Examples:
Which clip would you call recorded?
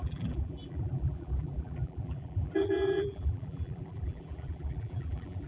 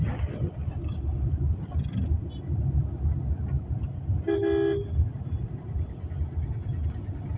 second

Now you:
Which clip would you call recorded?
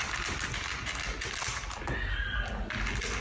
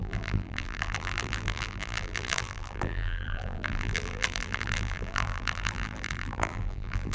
first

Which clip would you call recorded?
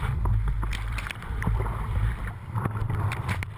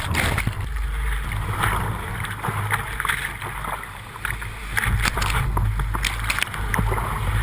second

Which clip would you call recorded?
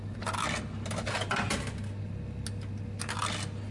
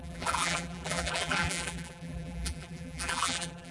first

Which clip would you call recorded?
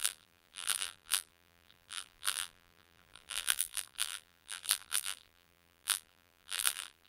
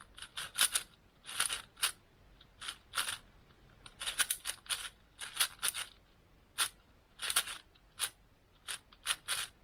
second